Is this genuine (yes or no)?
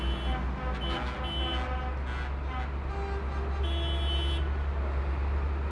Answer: yes